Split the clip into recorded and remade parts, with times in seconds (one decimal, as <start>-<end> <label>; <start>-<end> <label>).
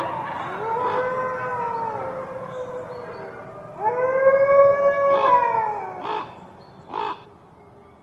0.0-8.0 recorded